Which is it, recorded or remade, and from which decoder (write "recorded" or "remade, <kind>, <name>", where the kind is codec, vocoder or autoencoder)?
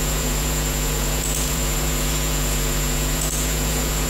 remade, vocoder, Vocos